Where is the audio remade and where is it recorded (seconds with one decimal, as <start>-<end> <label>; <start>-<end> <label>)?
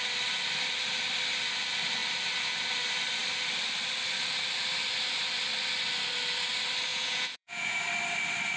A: 0.0-6.9 recorded; 6.9-7.8 remade; 7.8-8.6 recorded